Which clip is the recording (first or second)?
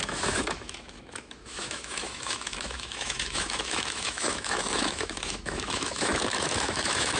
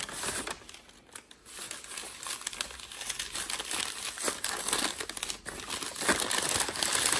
second